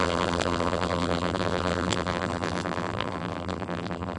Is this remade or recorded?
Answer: remade